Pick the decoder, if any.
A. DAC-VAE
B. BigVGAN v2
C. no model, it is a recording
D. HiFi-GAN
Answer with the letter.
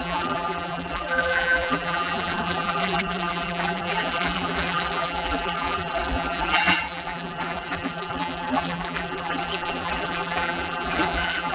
B